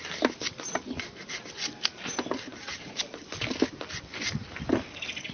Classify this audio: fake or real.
real